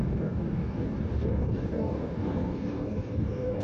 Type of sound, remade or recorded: remade